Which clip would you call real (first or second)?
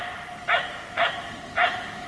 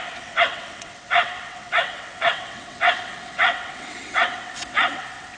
first